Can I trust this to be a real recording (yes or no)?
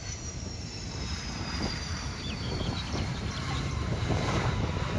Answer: no